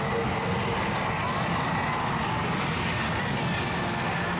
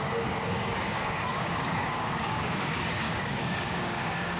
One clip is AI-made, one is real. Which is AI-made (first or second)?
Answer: second